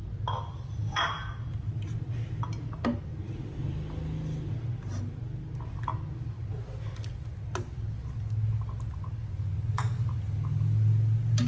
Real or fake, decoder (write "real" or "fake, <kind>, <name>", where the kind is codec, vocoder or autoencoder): real